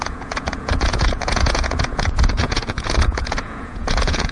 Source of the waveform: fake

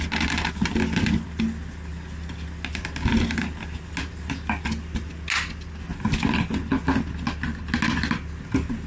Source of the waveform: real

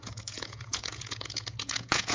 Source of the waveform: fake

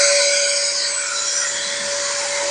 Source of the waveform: real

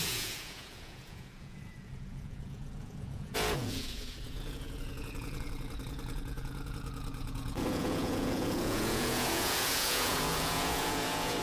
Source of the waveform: fake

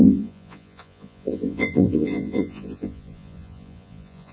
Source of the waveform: fake